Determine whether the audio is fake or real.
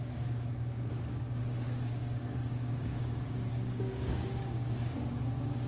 fake